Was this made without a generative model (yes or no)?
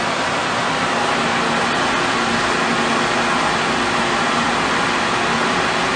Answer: yes